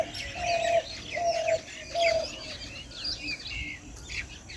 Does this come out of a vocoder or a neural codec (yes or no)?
no